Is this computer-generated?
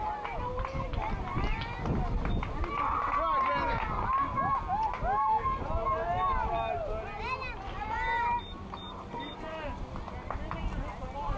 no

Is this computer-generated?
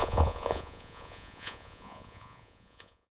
yes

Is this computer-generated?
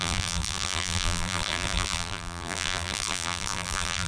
yes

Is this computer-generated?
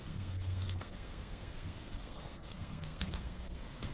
yes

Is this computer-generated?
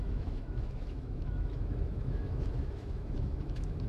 yes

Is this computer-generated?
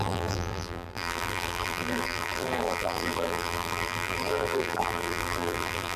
yes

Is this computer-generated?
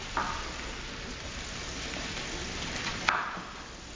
no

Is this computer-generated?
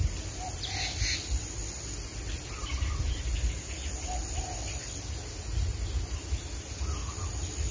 no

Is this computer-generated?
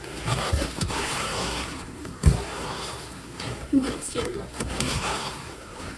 yes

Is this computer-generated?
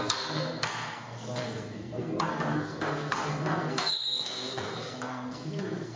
yes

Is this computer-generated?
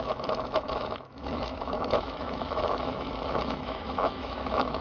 yes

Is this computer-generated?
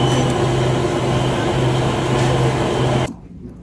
no